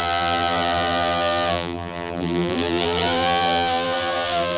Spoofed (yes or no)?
yes